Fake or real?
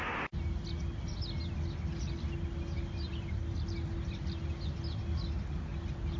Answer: real